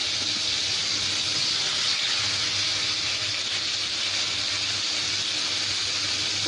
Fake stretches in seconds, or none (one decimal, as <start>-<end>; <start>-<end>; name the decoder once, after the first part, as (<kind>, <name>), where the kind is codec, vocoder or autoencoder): none